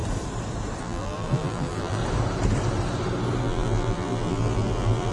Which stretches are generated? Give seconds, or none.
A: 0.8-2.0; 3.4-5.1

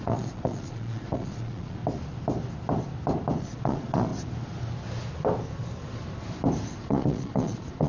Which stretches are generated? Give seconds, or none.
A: 0.0-1.8; 3.4-4.1; 6.8-7.9

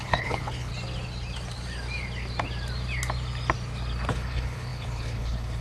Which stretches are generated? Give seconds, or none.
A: 0.0-0.7; 4.1-5.6

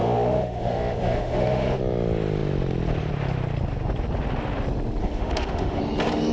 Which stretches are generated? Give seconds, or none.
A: 0.0-1.8; 5.0-5.8

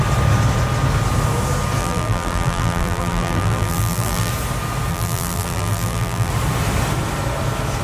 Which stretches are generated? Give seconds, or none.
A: 1.8-4.3; 4.9-6.3

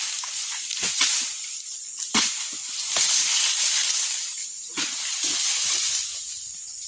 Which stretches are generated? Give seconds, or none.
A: none